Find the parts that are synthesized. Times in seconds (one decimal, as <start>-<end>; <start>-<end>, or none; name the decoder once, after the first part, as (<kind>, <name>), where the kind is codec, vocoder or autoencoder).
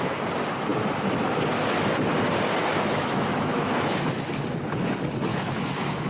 2.6-4.1 (autoencoder, DAC-VAE); 5.3-6.1